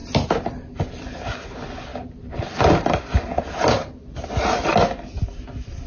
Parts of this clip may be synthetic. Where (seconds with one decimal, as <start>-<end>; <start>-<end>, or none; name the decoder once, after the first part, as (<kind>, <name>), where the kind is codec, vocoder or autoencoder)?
none